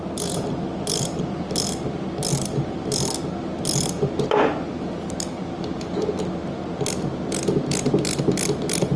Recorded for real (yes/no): yes